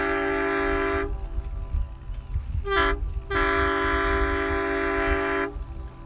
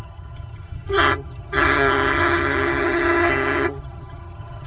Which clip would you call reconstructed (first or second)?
second